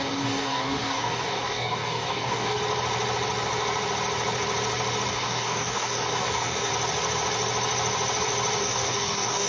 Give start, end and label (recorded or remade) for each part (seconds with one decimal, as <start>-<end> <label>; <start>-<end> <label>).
0.0-2.6 remade; 2.6-5.1 recorded; 5.1-6.7 remade; 6.7-8.6 recorded; 8.6-9.5 remade